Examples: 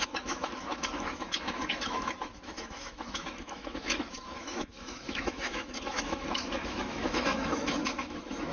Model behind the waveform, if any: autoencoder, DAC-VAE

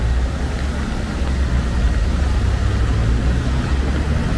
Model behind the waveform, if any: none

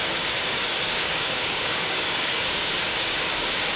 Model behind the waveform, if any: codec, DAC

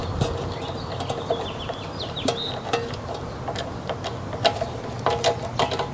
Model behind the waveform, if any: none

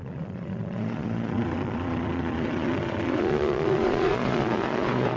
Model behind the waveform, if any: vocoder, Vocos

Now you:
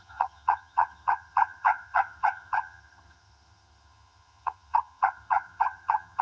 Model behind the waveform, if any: vocoder, HiFi-GAN